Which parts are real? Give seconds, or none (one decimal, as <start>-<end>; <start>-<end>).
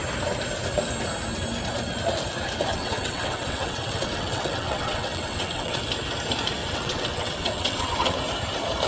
0.0-2.7; 5.8-6.6; 8.2-8.9